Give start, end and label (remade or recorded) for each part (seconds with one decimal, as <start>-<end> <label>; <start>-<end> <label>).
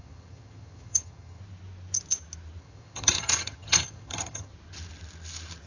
0.0-1.4 remade; 1.4-2.6 recorded; 2.6-4.5 remade; 4.5-5.7 recorded